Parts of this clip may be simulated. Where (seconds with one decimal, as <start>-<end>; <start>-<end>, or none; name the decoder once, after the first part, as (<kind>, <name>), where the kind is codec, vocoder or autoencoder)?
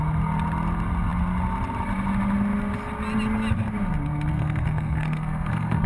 4.3-5.9 (codec, SNAC)